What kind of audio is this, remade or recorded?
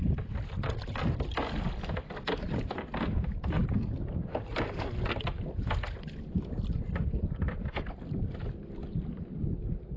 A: recorded